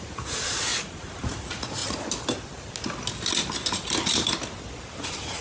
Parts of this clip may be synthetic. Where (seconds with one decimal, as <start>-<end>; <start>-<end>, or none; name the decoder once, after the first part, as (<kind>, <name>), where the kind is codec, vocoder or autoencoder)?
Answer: 0.0-1.8 (vocoder, Vocos); 5.0-5.4

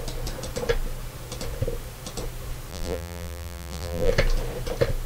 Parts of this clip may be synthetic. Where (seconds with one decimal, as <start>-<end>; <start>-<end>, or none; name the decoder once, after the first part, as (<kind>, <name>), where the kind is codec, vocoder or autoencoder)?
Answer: 2.7-4.1 (vocoder, BigVGAN v2)

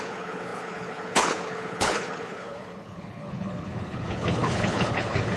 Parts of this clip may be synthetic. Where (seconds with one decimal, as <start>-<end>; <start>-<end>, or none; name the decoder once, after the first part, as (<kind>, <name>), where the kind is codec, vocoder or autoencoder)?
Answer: 0.0-5.4 (codec, HILCodec)